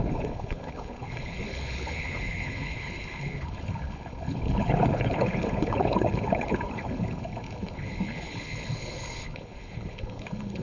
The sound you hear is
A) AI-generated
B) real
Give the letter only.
A